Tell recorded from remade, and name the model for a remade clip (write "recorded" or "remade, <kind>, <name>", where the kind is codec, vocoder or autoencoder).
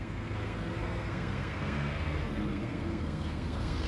remade, codec, SNAC